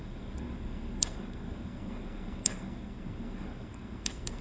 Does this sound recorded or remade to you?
remade